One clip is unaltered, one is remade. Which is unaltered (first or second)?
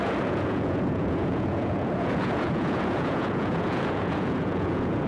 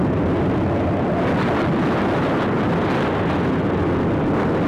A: second